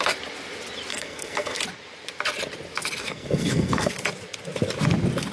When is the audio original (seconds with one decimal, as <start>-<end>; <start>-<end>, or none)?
0.0-0.9; 1.6-3.0; 3.9-5.3